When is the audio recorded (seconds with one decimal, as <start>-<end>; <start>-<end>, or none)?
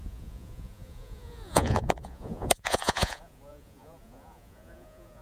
none